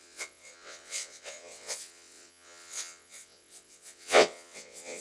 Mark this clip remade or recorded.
remade